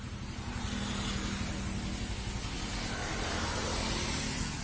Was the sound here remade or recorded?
recorded